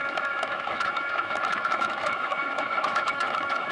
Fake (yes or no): yes